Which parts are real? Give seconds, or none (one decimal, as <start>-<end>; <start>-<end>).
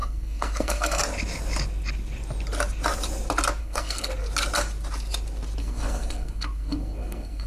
1.0-3.6; 4.1-5.6